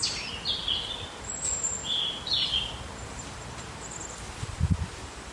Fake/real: fake